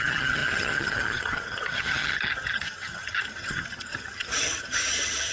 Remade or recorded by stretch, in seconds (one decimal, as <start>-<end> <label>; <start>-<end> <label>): 0.0-5.3 remade